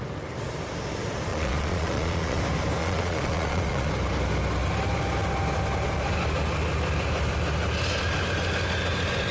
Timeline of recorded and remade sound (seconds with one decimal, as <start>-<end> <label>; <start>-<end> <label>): 0.0-1.3 recorded; 1.3-2.4 remade; 2.4-2.8 recorded; 2.8-3.9 remade; 3.9-9.3 recorded